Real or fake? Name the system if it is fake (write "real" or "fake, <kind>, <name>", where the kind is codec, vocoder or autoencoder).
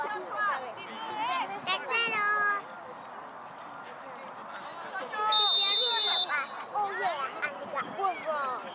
real